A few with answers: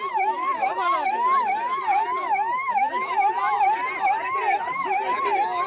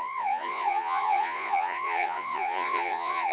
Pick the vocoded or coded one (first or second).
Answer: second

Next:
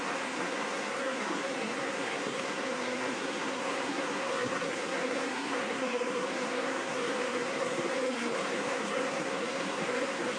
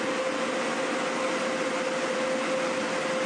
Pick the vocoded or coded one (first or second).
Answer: first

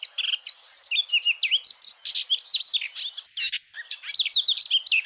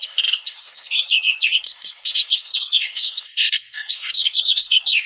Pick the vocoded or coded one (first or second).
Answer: second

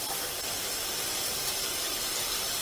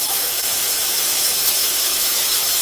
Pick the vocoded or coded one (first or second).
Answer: second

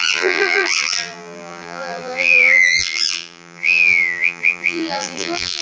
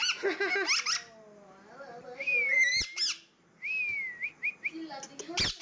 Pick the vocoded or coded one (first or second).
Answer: first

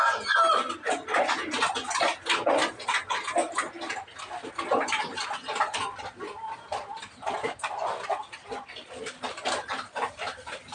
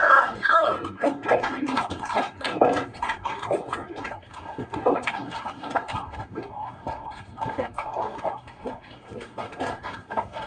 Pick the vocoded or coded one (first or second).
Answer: second